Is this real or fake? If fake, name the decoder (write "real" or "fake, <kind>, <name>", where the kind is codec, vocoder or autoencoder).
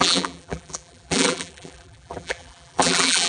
fake, vocoder, BigVGAN v2